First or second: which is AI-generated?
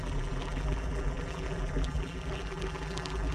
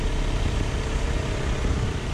first